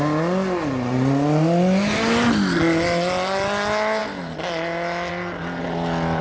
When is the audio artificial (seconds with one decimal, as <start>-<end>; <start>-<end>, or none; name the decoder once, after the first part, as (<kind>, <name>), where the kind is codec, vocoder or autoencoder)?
none